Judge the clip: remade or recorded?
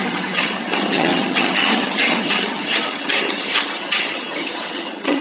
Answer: remade